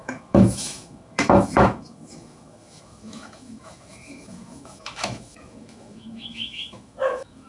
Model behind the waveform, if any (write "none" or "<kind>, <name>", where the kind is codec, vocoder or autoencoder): autoencoder, DAC-VAE